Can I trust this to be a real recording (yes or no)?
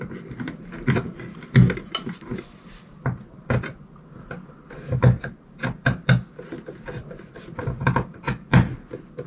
yes